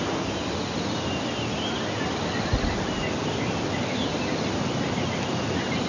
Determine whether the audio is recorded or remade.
recorded